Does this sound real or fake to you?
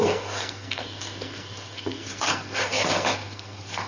fake